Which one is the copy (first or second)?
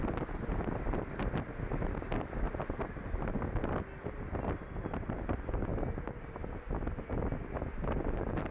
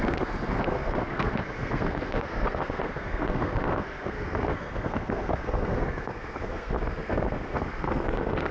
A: second